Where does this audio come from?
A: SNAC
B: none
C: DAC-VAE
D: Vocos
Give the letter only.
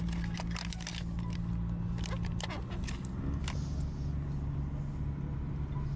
B